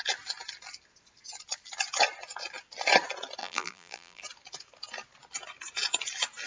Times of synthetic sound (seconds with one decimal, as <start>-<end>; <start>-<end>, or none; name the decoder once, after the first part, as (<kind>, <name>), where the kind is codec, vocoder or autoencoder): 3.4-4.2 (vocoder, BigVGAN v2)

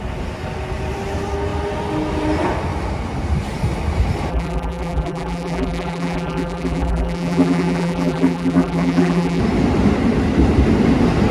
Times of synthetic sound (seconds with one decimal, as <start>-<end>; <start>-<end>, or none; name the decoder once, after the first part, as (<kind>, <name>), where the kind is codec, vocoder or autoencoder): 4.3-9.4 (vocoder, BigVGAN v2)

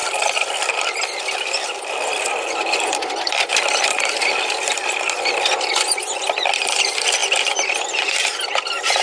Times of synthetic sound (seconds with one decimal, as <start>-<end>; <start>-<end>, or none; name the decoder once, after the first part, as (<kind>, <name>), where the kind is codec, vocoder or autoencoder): 0.0-0.8 (vocoder, BigVGAN v2); 7.2-9.0

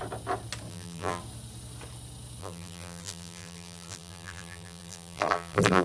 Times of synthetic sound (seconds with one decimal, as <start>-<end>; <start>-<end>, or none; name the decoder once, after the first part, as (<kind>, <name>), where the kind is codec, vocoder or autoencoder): 0.7-1.2 (vocoder, BigVGAN v2); 2.4-5.8

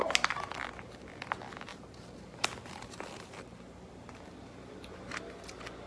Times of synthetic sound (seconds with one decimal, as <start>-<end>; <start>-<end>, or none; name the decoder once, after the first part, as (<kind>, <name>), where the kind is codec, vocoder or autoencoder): 1.7-5.2 (vocoder, BigVGAN v2)

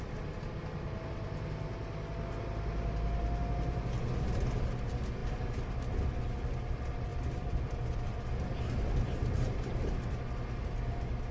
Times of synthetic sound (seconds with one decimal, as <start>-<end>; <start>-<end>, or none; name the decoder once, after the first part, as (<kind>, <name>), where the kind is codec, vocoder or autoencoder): 7.1-8.1 (vocoder, BigVGAN v2)

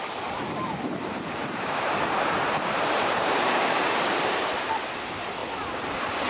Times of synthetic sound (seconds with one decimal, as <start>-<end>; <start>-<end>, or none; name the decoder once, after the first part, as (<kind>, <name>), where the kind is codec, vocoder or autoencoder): 0.7-4.5 (vocoder, BigVGAN v2)